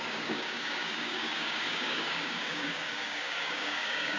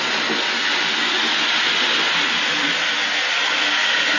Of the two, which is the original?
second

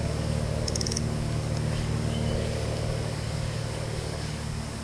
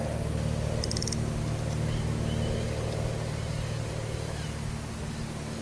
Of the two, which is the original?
second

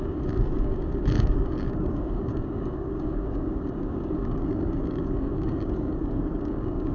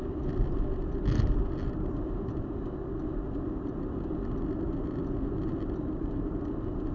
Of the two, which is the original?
second